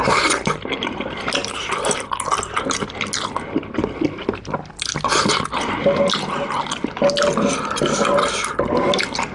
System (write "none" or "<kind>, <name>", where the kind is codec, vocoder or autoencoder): none